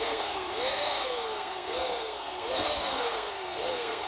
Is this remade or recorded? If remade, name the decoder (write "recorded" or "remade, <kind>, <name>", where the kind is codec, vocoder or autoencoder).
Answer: remade, codec, SNAC